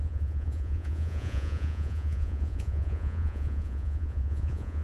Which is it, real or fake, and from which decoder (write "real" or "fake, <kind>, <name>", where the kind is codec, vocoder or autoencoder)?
fake, vocoder, Vocos